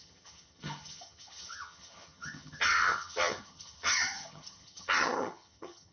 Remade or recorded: remade